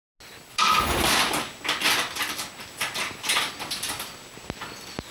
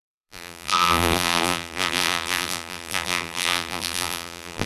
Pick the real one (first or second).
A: first